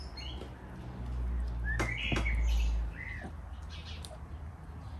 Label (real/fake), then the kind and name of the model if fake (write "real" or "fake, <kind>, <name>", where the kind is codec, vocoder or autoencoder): real